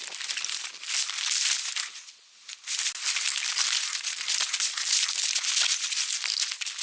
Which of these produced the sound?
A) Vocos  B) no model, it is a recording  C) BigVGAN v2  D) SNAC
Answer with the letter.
B